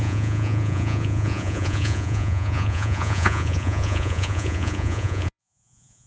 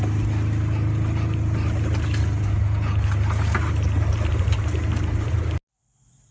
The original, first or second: second